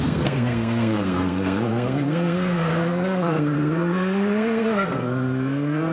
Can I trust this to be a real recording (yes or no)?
no